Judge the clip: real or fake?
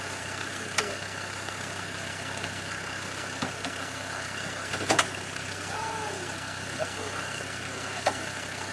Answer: fake